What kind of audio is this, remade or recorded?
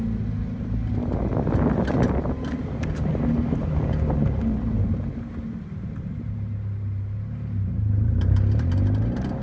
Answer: recorded